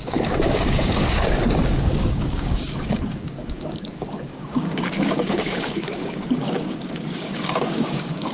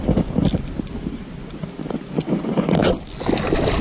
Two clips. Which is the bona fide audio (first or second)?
second